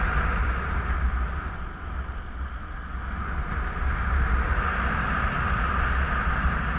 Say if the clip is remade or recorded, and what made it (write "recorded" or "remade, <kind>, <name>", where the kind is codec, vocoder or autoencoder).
recorded